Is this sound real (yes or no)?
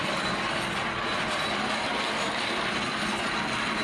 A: yes